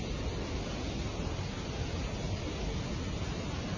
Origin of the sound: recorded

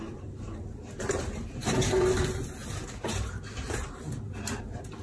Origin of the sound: remade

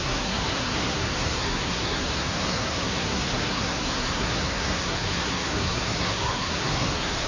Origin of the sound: remade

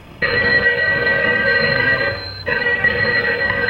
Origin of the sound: remade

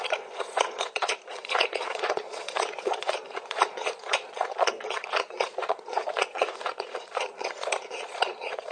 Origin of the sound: remade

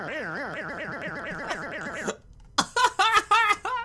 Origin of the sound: recorded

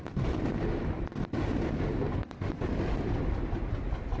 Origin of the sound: remade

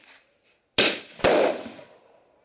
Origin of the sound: recorded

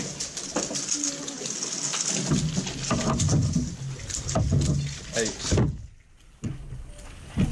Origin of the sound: recorded